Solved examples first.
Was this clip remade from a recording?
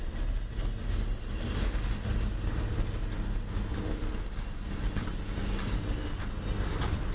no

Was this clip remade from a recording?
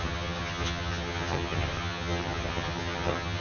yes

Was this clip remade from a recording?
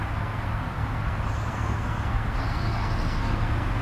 yes